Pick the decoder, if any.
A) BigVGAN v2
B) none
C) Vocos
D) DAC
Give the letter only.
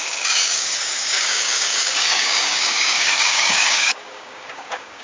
D